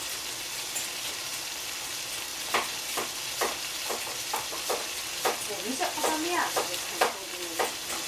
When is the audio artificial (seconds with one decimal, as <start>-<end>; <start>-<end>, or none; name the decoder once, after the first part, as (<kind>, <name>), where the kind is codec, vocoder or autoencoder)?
none